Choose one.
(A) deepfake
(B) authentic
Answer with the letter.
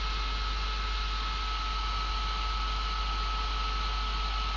B